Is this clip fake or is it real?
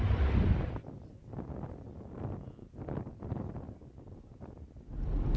fake